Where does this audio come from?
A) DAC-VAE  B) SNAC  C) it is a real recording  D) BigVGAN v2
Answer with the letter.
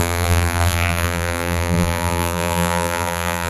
D